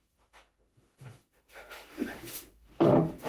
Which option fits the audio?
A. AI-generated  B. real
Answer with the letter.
A